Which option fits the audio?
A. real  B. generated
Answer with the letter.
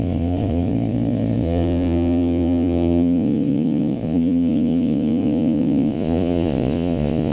B